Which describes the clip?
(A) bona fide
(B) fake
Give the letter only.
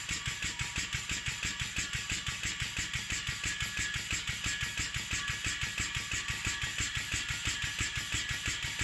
A